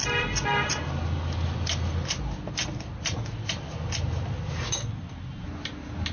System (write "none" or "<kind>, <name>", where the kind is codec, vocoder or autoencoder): none